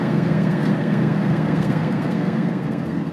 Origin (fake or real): fake